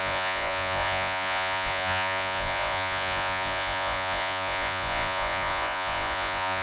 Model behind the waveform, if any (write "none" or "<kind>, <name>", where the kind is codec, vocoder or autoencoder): vocoder, Vocos